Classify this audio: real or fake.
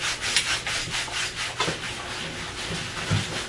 real